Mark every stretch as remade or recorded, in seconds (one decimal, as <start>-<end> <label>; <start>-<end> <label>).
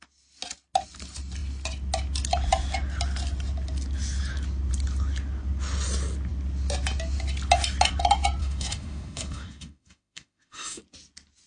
0.0-8.4 recorded; 8.4-10.8 remade; 10.8-11.5 recorded